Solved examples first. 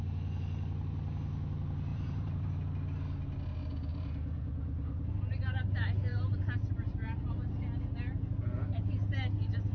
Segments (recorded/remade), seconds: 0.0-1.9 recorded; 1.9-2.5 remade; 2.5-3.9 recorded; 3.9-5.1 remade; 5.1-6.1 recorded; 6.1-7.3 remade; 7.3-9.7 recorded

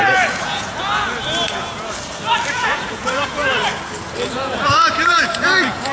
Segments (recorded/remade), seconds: 0.0-1.0 remade; 1.0-2.5 recorded; 2.5-3.4 remade; 3.4-4.3 recorded; 4.3-5.9 remade